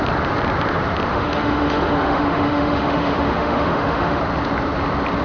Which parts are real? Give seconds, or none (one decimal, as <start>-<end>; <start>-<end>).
0.0-1.1; 4.2-5.2